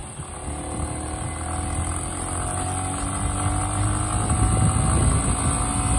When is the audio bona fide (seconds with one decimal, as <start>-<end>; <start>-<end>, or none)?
0.0-6.0